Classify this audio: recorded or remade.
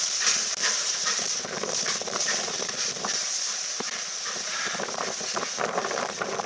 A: remade